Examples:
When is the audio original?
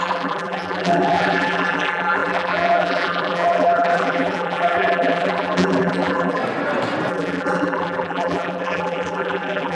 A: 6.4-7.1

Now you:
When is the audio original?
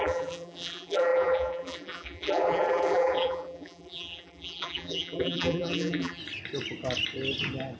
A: 6.2-7.8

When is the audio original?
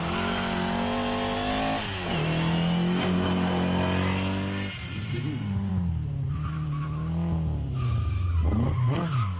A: 0.0-4.8; 5.7-9.4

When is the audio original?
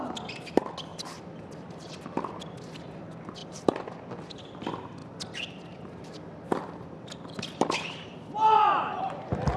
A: 0.0-0.9; 2.0-3.4; 4.5-5.0; 7.8-9.6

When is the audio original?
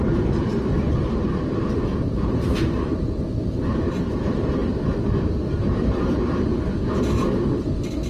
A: 4.6-5.1; 6.5-8.1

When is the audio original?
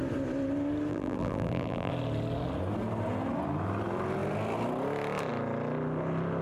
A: 0.0-0.9; 1.9-6.4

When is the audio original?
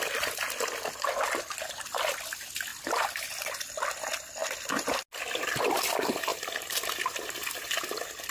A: 0.0-2.7; 3.7-8.3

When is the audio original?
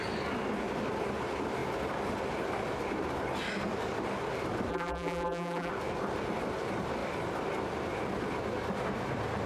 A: 0.0-4.7; 5.7-9.5